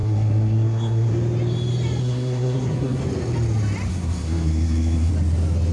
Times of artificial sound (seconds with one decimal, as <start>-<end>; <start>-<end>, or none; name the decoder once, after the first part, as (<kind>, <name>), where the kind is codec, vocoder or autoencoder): 0.0-1.1 (codec, SNAC); 2.0-3.0; 3.9-5.1